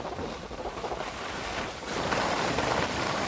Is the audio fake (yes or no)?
no